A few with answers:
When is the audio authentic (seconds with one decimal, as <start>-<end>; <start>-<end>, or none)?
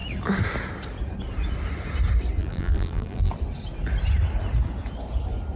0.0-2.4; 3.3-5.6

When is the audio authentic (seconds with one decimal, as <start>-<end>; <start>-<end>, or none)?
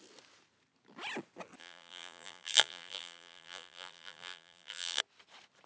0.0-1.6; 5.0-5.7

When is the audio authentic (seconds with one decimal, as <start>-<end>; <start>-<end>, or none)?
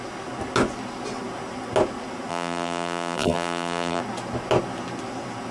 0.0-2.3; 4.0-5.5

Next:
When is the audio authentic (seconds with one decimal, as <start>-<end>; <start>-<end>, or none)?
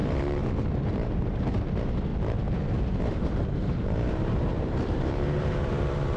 0.0-0.8; 2.1-3.0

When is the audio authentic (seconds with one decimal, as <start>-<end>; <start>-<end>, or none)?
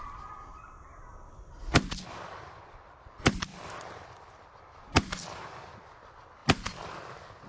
0.0-0.5; 1.0-3.5; 5.7-7.5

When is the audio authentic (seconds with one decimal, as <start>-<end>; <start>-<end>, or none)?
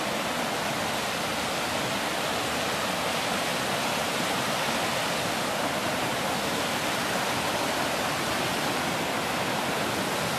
0.0-3.5; 4.9-5.8; 6.6-10.4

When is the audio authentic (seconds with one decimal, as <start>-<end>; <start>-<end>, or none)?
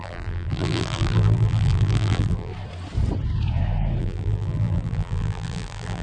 2.5-4.0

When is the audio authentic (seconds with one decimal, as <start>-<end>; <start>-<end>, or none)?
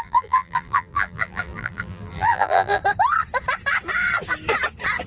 2.8-5.1